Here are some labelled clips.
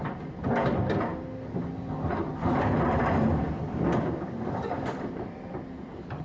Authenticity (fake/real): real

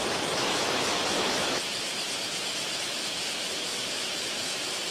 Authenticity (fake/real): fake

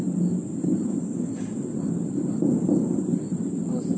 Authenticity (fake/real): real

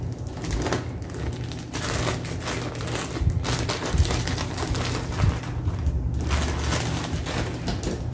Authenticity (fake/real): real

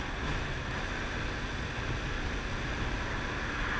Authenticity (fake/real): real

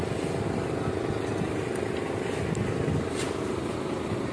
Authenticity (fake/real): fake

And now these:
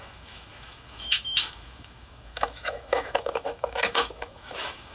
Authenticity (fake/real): fake